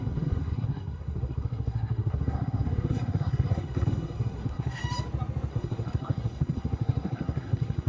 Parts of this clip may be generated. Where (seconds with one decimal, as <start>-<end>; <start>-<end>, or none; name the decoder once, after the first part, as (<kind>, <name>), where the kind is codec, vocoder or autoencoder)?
0.0-4.8 (codec, SNAC); 5.5-7.9